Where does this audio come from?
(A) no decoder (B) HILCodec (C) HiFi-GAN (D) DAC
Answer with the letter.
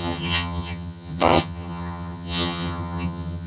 C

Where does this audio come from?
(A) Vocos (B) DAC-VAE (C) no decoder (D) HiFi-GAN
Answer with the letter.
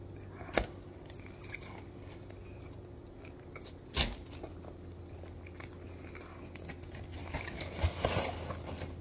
C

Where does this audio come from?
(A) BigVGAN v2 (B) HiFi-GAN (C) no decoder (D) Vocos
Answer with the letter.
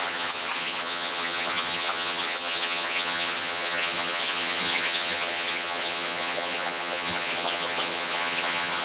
B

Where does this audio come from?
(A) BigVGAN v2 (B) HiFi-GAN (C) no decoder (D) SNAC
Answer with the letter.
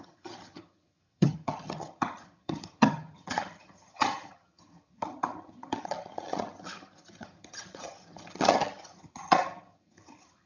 B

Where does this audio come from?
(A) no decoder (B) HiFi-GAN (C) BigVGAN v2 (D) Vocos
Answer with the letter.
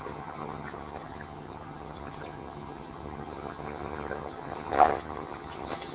B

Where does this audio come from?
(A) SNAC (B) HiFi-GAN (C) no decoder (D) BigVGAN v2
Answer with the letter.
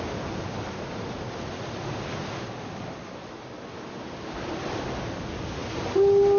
C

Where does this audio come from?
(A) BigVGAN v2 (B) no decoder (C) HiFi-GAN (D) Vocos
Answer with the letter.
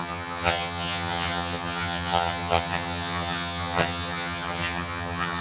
C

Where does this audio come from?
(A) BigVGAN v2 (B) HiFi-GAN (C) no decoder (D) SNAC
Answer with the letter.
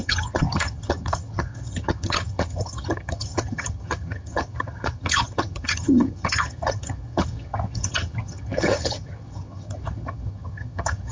B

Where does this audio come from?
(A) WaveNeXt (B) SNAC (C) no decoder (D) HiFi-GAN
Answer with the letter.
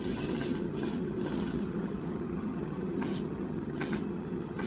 D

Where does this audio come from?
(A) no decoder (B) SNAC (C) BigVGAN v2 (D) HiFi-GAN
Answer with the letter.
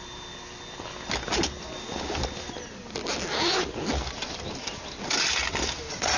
A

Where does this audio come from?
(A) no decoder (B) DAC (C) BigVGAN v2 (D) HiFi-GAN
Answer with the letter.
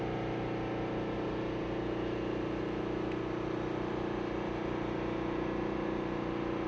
A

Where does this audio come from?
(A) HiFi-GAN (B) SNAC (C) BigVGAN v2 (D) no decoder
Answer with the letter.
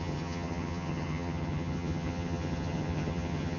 A